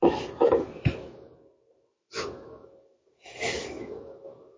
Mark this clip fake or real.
fake